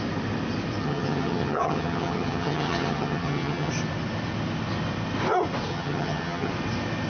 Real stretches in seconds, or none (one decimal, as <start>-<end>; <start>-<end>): 0.0-0.8; 3.7-5.7; 6.5-7.1